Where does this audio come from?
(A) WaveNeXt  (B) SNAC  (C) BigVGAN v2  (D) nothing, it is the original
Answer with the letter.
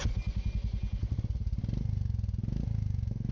D